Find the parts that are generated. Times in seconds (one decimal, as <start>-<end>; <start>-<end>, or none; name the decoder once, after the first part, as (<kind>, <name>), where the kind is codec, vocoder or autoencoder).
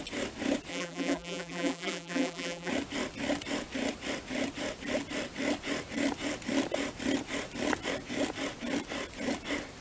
0.7-2.7 (vocoder, BigVGAN v2)